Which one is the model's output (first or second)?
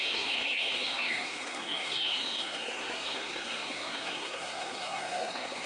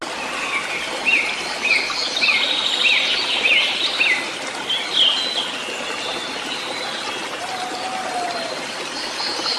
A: first